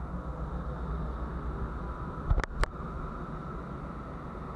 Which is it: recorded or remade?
recorded